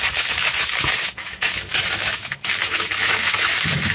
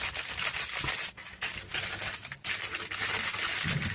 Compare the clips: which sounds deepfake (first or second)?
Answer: first